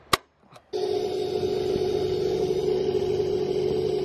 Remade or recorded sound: recorded